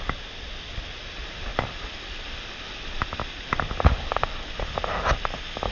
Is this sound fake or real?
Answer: real